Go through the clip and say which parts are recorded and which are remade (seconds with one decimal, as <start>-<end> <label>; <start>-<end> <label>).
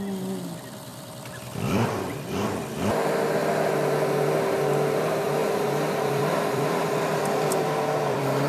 0.0-0.9 recorded; 0.9-2.3 remade; 2.3-5.4 recorded; 5.4-8.5 remade